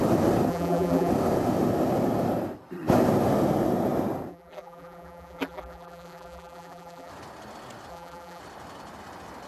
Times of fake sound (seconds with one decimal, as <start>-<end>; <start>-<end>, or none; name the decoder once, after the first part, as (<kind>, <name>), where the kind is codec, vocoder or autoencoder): 0.5-1.1 (vocoder, BigVGAN v2); 4.3-7.1; 7.9-8.4